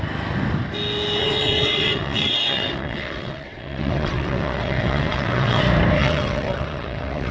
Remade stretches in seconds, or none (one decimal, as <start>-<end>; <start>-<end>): 1.2-5.6; 6.0-7.3